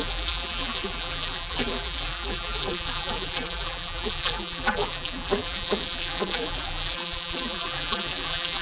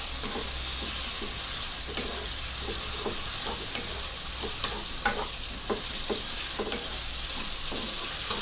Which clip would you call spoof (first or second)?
first